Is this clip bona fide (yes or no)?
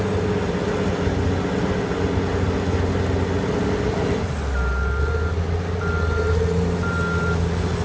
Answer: yes